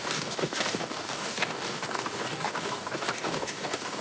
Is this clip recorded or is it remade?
remade